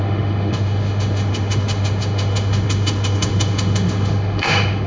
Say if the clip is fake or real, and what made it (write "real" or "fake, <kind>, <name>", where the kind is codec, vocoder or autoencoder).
fake, autoencoder, DAC-VAE